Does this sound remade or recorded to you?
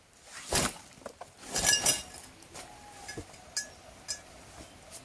recorded